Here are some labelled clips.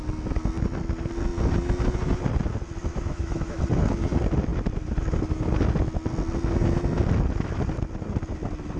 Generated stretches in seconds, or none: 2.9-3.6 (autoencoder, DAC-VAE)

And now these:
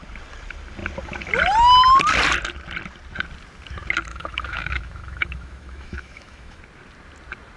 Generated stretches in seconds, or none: 4.1-6.6 (autoencoder, DAC-VAE)

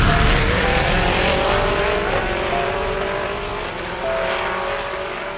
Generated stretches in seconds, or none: 0.0-3.5 (vocoder, BigVGAN v2)

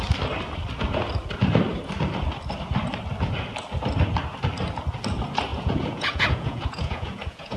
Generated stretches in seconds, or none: 5.5-7.6 (vocoder, Vocos)

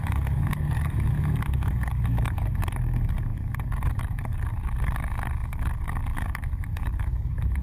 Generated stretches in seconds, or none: 0.0-7.6 (codec, DAC)

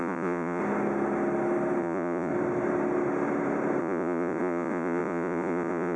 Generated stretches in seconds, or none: 0.0-0.6 (vocoder, Vocos); 1.8-2.3; 3.8-6.0

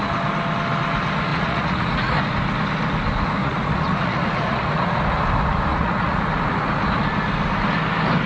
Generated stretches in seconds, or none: 1.3-2.2 (vocoder, Vocos); 3.4-5.0; 5.7-6.2